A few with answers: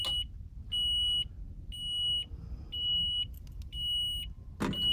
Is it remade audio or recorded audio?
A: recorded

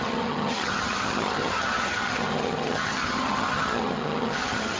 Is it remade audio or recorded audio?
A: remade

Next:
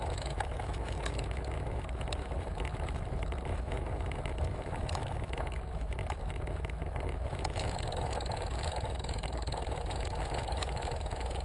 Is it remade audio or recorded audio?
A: remade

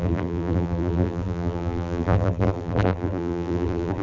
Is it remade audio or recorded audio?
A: remade